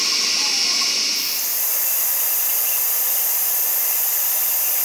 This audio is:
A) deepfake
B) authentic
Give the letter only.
B